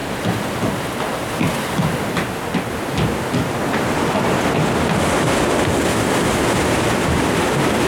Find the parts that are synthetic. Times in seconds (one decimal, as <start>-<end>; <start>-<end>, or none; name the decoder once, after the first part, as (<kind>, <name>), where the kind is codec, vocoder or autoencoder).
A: 4.7-7.9 (vocoder, BigVGAN v2)

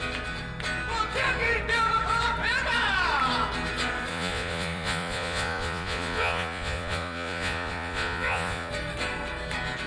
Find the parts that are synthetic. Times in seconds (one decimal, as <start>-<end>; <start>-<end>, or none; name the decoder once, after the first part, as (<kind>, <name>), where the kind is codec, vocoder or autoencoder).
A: 4.1-8.7 (vocoder, Vocos)

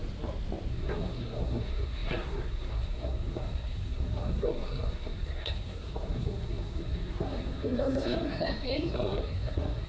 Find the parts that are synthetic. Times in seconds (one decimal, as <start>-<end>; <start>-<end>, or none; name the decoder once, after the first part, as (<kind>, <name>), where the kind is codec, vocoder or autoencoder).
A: 0.7-9.9 (codec, SNAC)

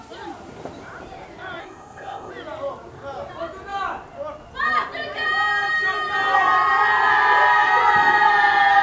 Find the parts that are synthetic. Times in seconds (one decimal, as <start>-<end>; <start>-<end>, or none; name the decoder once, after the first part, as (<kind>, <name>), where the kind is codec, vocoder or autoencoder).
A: 1.6-2.3 (codec, ZipCodec)

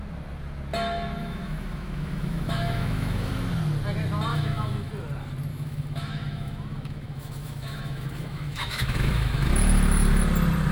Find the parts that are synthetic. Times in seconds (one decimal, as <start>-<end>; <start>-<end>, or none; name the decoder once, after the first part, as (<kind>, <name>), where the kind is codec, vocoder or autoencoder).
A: 1.2-3.3 (autoencoder, DAC-VAE); 4.3-4.9; 5.5-9.5